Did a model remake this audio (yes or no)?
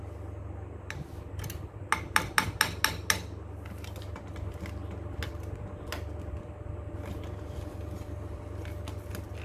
no